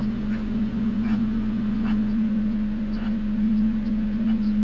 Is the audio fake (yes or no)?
yes